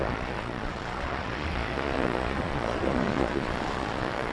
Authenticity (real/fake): fake